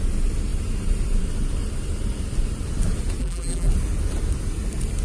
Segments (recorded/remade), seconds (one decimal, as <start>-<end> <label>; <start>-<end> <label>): 0.0-3.2 recorded; 3.2-3.7 remade; 3.7-5.0 recorded